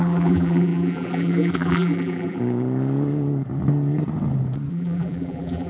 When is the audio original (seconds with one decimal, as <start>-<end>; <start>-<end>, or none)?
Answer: 2.4-4.7